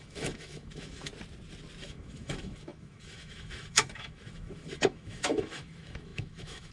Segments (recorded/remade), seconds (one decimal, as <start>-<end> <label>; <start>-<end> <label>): 0.0-1.1 remade; 1.1-1.8 recorded; 1.8-6.7 remade